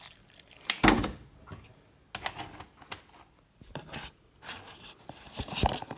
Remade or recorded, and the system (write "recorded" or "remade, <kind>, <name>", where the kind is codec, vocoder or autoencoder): recorded